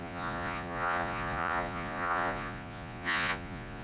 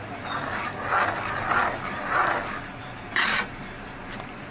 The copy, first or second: first